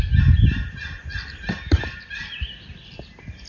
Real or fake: real